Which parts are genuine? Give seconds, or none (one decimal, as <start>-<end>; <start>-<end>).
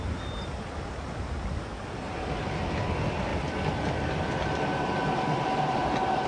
0.0-6.3